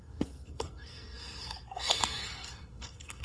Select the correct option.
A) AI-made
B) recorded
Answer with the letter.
A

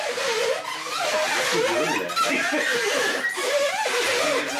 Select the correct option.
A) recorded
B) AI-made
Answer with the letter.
A